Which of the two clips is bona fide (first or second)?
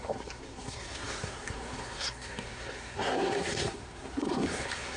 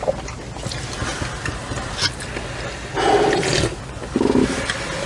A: second